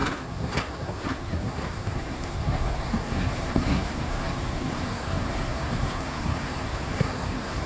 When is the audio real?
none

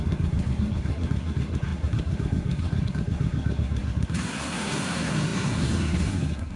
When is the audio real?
none

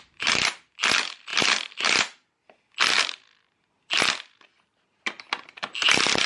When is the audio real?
0.0-6.3

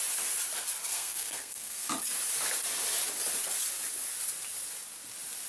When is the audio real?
0.0-0.9; 1.9-5.5